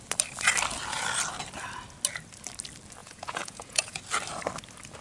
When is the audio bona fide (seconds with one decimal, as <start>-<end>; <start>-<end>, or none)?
0.0-3.0; 4.0-5.0